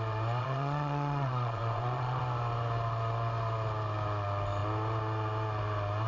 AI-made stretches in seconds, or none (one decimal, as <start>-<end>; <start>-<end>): 0.4-2.2